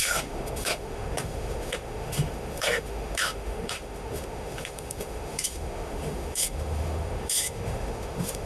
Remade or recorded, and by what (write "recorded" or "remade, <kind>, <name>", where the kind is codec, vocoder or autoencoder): remade, autoencoder, DAC-VAE